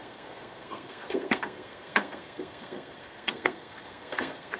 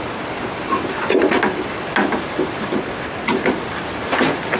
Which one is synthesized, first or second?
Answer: first